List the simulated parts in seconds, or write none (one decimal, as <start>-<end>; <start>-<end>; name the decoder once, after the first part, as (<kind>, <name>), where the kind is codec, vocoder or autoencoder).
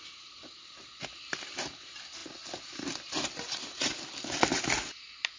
none